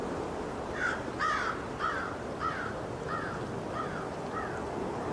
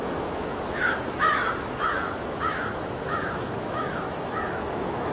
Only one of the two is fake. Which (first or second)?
second